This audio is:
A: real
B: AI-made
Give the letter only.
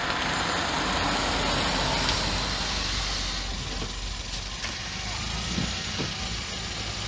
A